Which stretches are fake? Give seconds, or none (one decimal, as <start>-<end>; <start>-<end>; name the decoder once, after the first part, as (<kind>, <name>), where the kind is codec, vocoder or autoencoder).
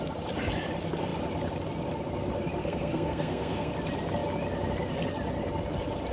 2.6-3.7 (codec, SNAC)